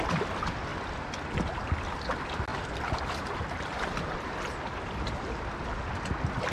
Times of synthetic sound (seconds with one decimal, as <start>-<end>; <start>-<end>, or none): 0.7-1.2; 2.5-4.4